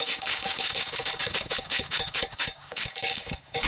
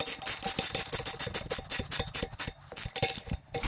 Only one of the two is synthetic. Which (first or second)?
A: first